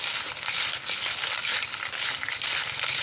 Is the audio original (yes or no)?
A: yes